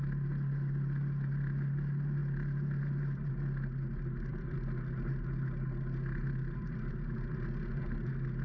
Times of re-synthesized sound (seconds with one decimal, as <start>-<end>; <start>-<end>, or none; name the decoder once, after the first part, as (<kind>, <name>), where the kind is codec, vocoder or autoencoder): 4.3-6.9 (vocoder, BigVGAN v2)